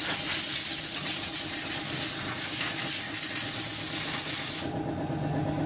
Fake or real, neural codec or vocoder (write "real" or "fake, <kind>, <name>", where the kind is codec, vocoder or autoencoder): real